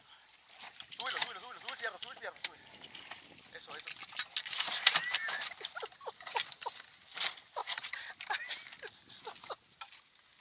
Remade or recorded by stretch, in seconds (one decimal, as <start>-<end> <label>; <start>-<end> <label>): 0.0-7.6 recorded; 7.6-8.1 remade; 8.1-10.4 recorded